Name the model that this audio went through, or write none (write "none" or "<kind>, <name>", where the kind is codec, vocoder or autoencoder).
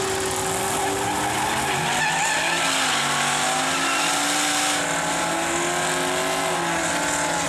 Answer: none